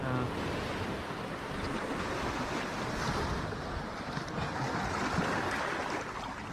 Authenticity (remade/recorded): recorded